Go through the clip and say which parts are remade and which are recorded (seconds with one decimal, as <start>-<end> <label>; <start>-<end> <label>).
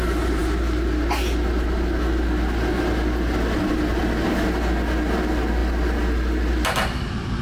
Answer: 0.0-7.4 recorded